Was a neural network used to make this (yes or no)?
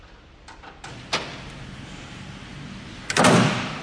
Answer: no